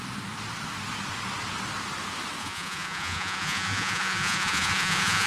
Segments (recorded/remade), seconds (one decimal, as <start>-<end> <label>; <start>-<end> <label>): 0.0-2.4 recorded; 2.4-5.3 remade